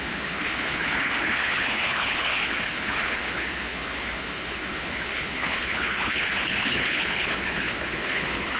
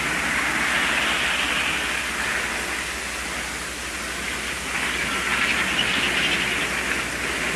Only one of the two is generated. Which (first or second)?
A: first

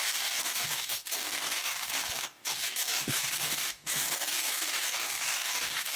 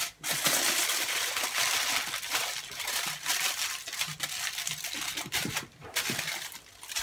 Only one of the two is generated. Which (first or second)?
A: first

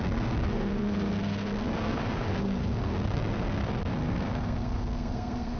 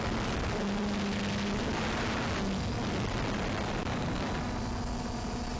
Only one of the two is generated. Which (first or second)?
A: first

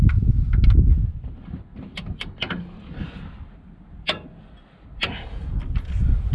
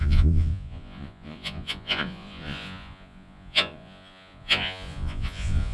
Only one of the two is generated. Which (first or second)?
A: second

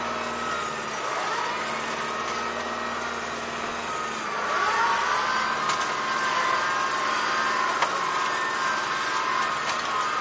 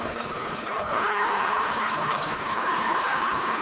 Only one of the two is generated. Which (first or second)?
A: second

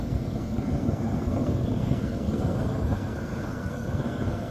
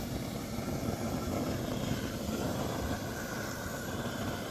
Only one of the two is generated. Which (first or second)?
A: first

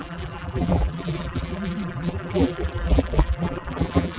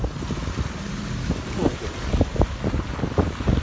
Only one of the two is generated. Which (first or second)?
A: first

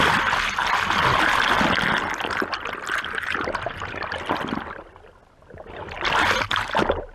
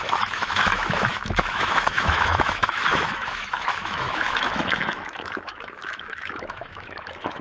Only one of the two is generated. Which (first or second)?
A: second